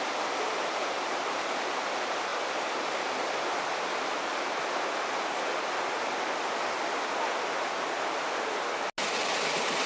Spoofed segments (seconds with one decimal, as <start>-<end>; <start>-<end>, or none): none